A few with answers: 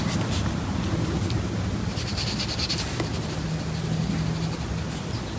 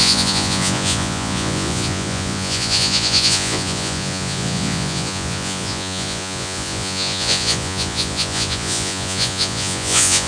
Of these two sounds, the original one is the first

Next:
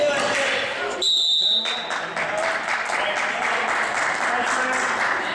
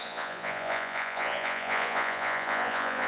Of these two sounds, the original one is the first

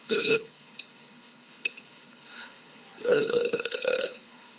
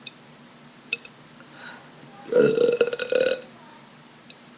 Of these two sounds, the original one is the second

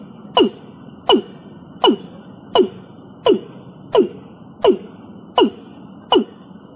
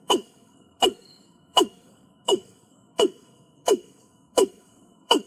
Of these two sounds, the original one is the first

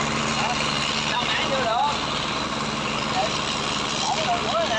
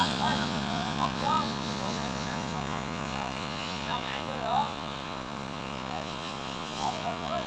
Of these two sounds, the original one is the first